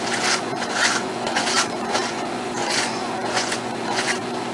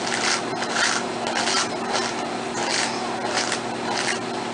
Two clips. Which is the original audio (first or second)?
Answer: second